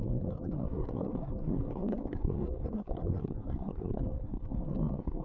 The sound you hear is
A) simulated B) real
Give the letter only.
A